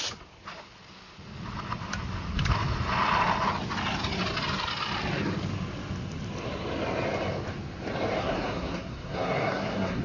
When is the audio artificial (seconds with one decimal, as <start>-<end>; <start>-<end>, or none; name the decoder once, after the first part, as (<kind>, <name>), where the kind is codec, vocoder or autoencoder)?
8.2-10.0 (codec, SNAC)